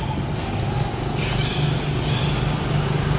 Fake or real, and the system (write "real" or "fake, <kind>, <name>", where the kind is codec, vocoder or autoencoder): real